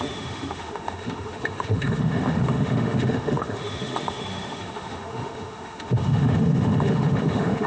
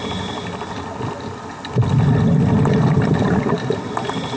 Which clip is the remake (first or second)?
first